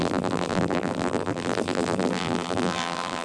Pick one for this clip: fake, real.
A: fake